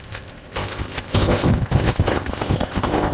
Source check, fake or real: fake